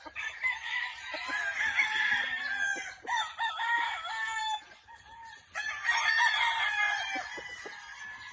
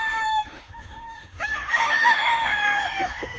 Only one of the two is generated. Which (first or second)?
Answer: second